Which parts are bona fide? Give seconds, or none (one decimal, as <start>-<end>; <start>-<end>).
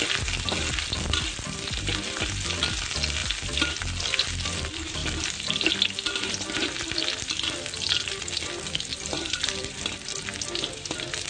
0.0-5.0; 5.7-8.9; 10.2-11.3